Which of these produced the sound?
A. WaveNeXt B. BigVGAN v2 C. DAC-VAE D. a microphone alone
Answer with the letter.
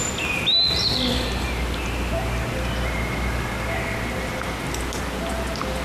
D